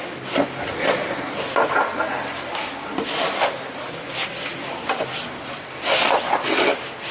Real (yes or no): yes